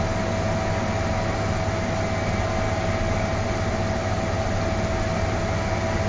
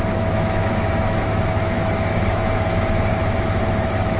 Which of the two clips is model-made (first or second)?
second